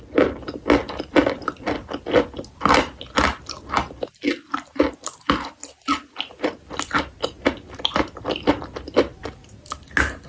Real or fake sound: real